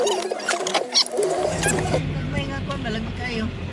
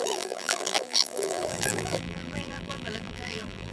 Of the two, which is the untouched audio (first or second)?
first